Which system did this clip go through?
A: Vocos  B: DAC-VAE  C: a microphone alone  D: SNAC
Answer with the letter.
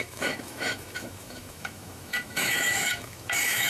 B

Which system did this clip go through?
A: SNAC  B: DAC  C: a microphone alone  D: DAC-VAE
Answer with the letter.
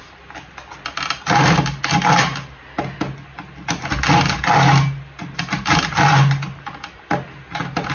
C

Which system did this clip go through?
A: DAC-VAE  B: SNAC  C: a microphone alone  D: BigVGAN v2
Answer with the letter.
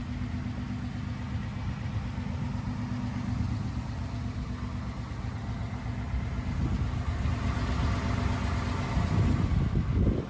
C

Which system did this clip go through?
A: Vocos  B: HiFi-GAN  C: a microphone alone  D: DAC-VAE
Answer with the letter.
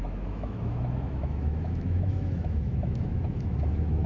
D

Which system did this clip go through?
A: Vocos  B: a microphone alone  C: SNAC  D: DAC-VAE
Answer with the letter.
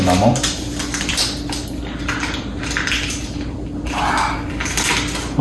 B